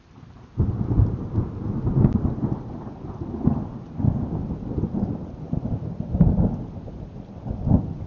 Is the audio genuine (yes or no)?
yes